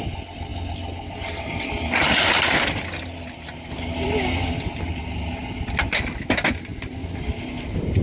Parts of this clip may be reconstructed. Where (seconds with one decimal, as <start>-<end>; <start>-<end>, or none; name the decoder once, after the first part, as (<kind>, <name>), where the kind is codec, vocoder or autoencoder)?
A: none